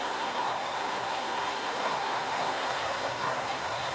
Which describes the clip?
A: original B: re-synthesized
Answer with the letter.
B